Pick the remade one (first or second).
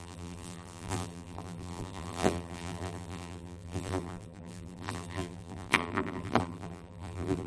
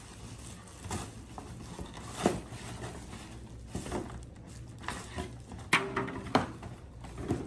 first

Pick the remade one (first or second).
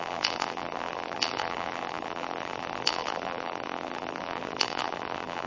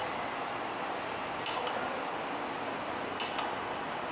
first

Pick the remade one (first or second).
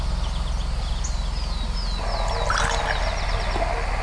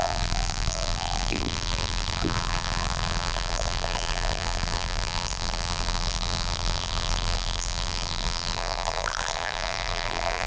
second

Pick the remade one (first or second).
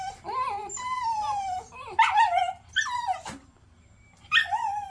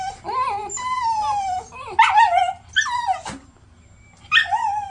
first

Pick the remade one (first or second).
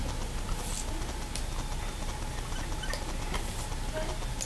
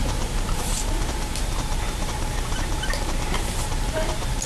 second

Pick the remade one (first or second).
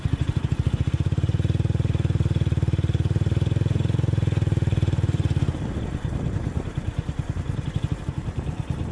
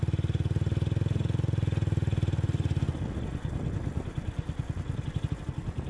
first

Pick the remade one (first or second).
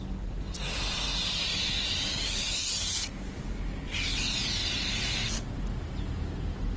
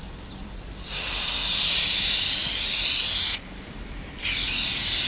second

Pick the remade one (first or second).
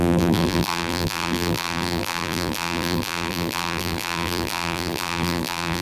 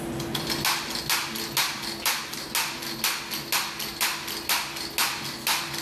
first